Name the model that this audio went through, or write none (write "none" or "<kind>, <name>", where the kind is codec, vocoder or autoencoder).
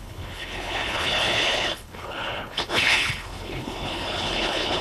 codec, HILCodec